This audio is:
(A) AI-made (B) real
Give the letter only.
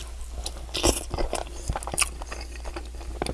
B